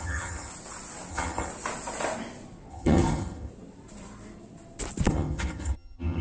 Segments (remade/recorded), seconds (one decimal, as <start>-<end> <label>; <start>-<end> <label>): 0.0-0.5 remade; 0.5-1.1 recorded; 1.1-1.5 remade; 1.5-2.7 recorded; 2.7-3.5 remade; 3.5-5.1 recorded; 5.1-6.2 remade